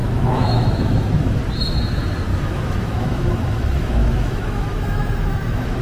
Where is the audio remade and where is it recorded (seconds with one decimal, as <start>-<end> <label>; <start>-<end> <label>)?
0.0-1.4 remade; 1.4-2.3 recorded; 2.3-5.8 remade